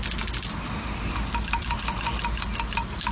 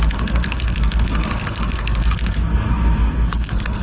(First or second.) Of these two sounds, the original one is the first